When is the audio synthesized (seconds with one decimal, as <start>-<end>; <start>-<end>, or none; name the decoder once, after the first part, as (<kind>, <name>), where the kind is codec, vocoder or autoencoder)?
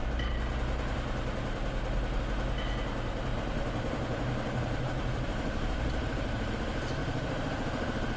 3.3-6.5 (vocoder, BigVGAN v2); 7.0-8.2